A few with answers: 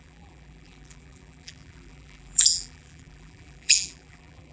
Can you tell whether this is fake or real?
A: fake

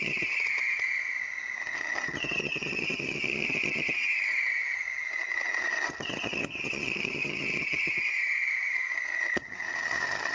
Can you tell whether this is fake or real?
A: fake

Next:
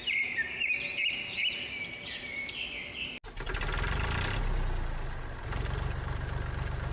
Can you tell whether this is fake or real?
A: real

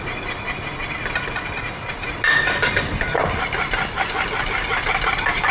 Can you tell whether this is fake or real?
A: real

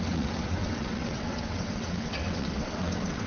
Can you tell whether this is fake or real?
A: fake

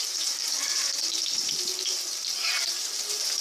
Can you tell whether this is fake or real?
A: fake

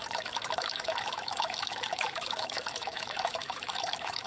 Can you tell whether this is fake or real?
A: fake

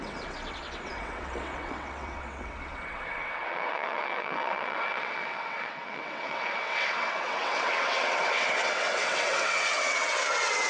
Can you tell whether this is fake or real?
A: fake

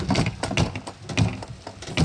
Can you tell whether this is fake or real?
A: real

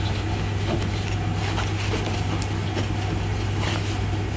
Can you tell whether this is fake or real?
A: real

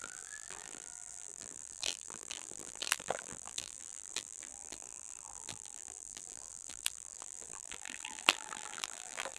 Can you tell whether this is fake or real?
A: fake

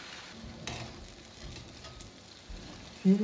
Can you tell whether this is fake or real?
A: real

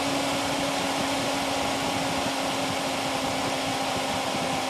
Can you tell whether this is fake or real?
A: real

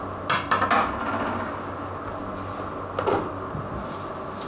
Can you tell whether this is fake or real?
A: real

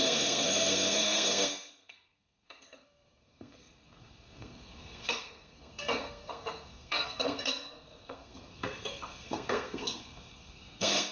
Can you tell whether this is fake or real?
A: fake